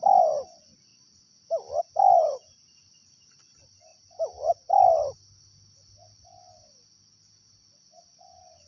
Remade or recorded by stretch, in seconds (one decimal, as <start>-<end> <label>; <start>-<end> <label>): 0.0-8.7 recorded